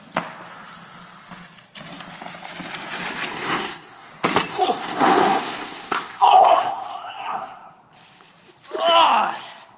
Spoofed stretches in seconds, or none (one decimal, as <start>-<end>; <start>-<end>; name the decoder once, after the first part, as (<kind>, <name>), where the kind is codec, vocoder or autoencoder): 3.3-4.1 (codec, SNAC); 4.5-7.7